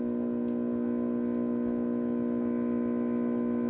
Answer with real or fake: real